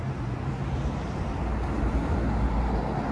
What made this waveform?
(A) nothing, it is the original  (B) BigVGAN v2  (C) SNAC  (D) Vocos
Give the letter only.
A